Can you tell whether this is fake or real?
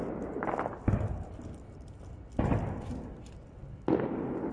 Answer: real